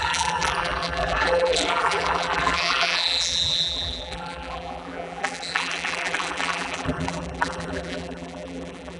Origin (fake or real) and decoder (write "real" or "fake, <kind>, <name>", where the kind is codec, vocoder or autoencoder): fake, vocoder, BigVGAN v2